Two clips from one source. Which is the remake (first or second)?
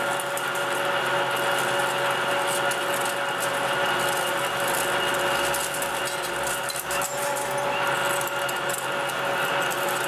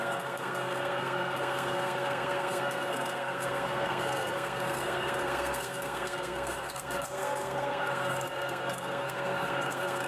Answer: second